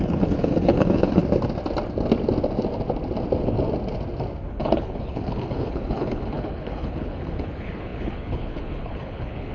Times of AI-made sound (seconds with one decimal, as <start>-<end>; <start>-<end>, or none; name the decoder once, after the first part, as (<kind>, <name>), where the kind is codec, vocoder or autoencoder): 0.0-1.2 (codec, HILCodec); 4.5-9.5